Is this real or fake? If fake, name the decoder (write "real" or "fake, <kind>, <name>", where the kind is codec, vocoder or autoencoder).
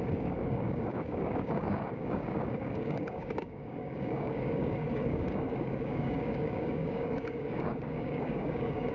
fake, codec, DAC